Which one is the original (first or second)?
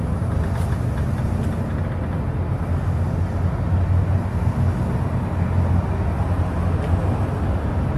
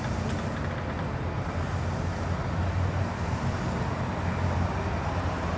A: first